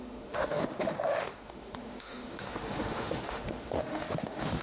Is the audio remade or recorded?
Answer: remade